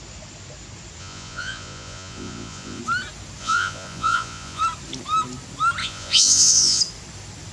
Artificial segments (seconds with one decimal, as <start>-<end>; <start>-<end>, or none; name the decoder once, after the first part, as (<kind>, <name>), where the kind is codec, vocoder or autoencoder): 1.0-2.8 (vocoder, Vocos); 3.4-4.6; 5.8-6.8